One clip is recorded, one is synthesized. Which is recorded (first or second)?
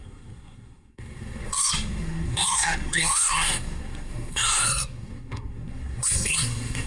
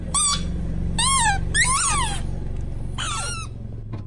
second